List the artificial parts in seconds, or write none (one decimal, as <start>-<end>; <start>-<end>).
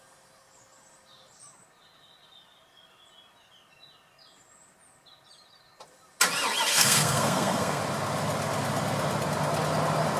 6.7-7.8